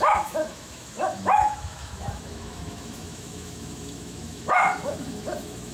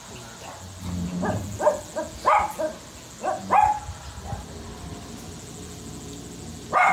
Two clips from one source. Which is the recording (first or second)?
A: second